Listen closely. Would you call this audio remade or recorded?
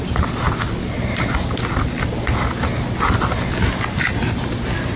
recorded